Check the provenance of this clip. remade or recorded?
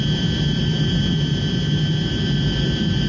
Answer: remade